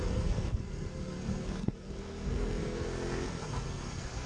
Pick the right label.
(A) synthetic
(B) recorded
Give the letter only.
A